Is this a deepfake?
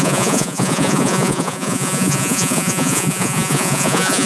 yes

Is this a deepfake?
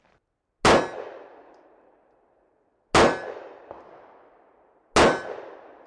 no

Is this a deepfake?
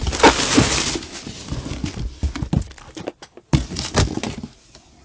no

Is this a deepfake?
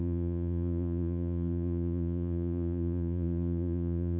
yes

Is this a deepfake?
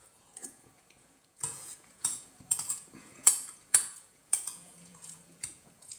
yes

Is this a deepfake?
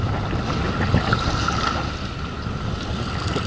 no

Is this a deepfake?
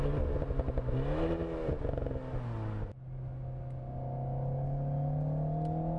no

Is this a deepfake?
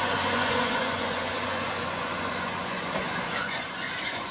yes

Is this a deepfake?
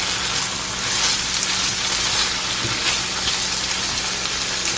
no